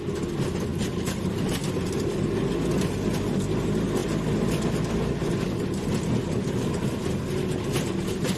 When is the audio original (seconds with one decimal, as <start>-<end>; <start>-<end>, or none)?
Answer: 0.0-8.4